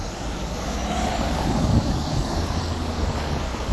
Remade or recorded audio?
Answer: remade